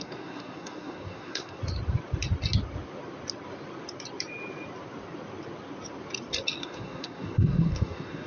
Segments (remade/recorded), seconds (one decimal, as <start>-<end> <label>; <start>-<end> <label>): 0.0-1.6 remade; 1.6-6.6 recorded; 6.6-8.3 remade